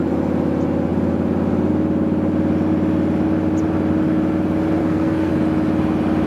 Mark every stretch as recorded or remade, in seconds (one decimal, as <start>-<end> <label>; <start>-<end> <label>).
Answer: 0.0-4.8 recorded; 4.8-5.3 remade; 5.3-6.3 recorded

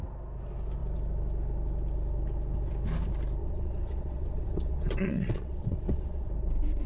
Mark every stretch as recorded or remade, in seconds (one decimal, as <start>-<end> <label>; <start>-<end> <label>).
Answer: 0.0-3.4 recorded; 3.4-6.3 remade; 6.3-6.9 recorded

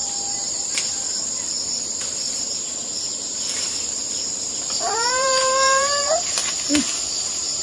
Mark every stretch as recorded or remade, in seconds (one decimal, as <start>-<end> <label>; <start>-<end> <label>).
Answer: 0.0-1.5 recorded; 1.5-6.4 remade; 6.4-7.6 recorded

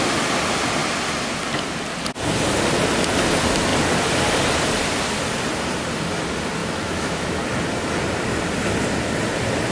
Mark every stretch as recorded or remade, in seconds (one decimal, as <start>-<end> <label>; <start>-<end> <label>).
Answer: 0.0-6.6 recorded; 6.6-7.4 remade; 7.4-9.7 recorded

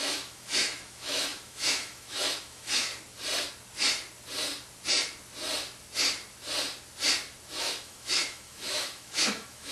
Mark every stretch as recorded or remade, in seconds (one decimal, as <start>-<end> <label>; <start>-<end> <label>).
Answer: 0.0-2.9 remade; 2.9-7.6 recorded; 7.6-9.7 remade

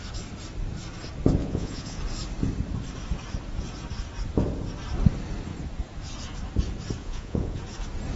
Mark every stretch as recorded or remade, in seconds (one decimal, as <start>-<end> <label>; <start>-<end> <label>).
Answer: 0.0-1.4 recorded; 1.4-2.0 remade; 2.0-7.0 recorded; 7.0-7.6 remade; 7.6-8.2 recorded

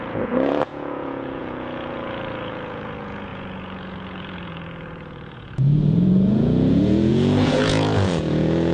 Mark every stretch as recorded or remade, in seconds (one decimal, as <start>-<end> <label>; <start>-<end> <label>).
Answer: 0.0-8.7 remade

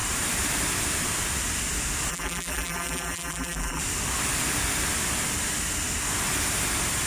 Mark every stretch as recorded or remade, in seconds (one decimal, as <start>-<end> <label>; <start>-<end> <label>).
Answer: 0.0-2.1 recorded; 2.1-3.8 remade; 3.8-7.1 recorded